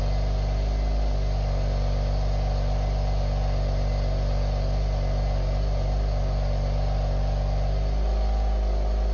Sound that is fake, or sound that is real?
real